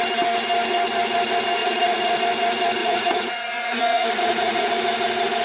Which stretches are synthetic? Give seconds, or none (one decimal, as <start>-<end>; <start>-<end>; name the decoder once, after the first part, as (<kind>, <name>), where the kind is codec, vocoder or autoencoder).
1.6-2.2 (vocoder, Vocos); 2.8-4.7